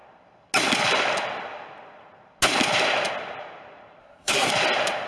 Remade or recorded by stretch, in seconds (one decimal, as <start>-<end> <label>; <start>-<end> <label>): 0.0-4.0 recorded; 4.0-4.5 remade; 4.5-5.1 recorded